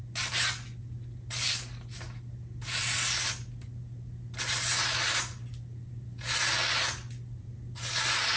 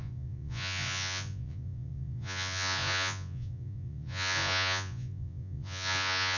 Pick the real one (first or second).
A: first